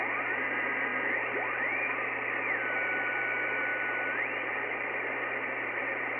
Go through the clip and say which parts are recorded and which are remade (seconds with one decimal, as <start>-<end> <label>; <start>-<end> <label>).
0.0-6.2 remade